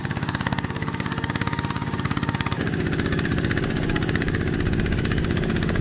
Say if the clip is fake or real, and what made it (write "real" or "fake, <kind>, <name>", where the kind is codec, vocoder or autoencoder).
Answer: fake, codec, DAC